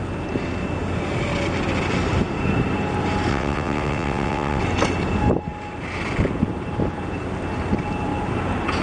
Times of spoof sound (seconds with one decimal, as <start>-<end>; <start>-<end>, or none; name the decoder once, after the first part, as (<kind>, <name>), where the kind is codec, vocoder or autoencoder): 3.3-4.6 (vocoder, WaveNeXt)